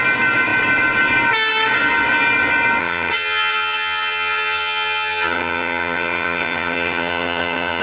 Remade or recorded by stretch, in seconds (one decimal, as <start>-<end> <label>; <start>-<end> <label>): 0.0-2.8 recorded; 2.8-7.8 remade